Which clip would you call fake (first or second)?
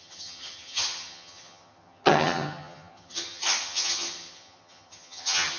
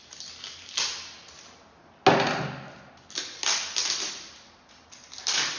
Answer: first